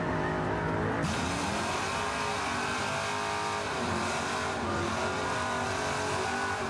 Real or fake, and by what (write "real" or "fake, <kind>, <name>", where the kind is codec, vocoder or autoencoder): real